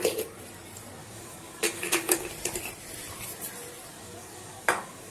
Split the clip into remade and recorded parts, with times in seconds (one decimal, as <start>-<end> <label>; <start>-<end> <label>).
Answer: 0.0-1.0 recorded; 1.0-2.3 remade; 2.3-3.9 recorded; 3.9-5.1 remade